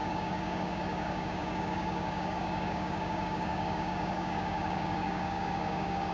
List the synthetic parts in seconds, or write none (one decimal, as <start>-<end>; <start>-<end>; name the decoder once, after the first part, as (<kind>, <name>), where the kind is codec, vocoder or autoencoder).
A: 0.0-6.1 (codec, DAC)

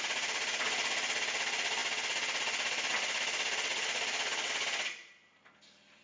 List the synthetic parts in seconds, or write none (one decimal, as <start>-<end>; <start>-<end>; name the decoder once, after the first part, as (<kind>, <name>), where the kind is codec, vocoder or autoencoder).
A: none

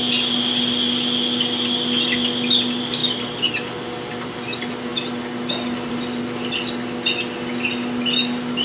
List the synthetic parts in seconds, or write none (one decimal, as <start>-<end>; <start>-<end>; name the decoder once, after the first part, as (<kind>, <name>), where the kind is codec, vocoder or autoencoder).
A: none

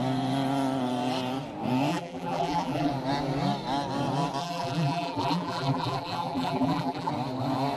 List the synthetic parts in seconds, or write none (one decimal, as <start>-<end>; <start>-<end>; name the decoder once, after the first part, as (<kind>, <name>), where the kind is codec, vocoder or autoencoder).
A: 1.9-2.9 (vocoder, BigVGAN v2); 4.4-7.1

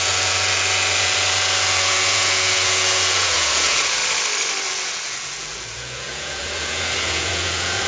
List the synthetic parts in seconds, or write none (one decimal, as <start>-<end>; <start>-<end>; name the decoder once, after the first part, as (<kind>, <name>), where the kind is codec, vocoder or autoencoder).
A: 0.0-4.0 (vocoder, Vocos); 4.7-7.9

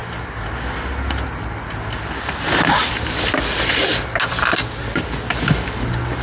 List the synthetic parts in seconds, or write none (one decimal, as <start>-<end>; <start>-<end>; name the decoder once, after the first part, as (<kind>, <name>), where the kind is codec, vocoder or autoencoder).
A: none

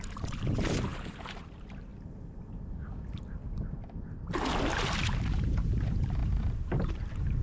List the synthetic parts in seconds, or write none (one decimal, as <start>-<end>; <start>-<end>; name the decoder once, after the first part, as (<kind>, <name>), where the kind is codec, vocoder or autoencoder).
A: 0.0-1.9 (vocoder, BigVGAN v2); 5.0-7.4